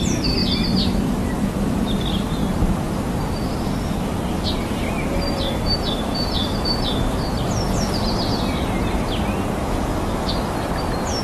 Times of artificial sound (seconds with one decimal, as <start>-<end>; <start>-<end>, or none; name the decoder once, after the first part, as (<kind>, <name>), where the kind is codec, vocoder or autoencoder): 9.6-10.3 (autoencoder, DAC-VAE)